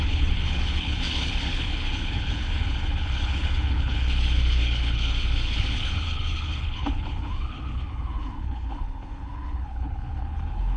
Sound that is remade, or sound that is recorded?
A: remade